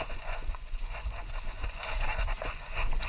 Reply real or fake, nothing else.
fake